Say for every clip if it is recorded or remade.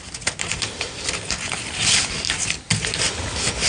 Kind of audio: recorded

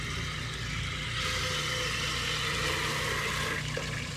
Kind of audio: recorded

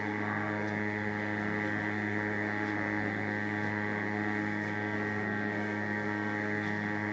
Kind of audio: remade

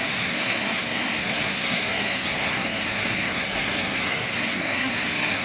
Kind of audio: remade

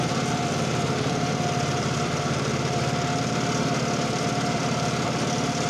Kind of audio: remade